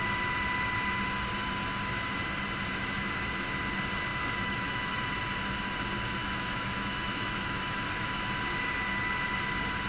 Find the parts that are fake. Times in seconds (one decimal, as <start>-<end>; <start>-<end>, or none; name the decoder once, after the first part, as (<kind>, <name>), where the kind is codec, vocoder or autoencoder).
4.1-5.0 (autoencoder, DAC-VAE); 6.2-8.3

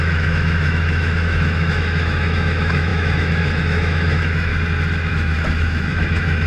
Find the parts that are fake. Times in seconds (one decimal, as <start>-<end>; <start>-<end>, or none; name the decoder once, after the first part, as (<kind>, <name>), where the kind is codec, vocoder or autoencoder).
0.0-4.5 (autoencoder, DAC-VAE); 5.1-6.5